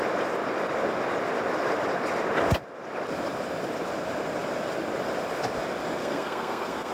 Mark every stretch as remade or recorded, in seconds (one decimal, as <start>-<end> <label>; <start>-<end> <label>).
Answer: 0.0-6.0 recorded; 6.0-6.9 remade